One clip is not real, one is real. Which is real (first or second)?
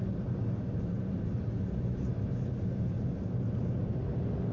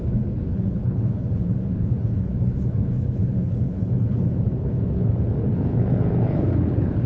first